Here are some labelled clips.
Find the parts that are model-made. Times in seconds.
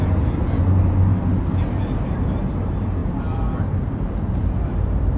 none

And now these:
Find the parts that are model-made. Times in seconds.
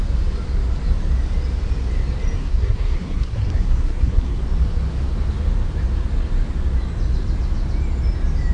2.4-4.4 (codec, SNAC)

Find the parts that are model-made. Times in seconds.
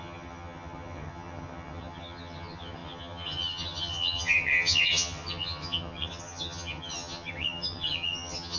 0.0-8.6 (vocoder, HiFi-GAN)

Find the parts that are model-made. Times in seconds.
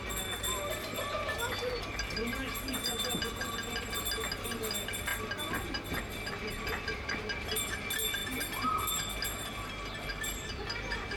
2.2-3.9 (vocoder, BigVGAN v2); 8.2-8.9